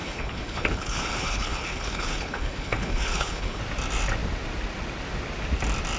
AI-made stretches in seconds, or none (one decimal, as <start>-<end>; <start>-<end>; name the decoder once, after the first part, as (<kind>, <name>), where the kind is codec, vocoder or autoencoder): 0.0-3.6 (codec, HILCodec)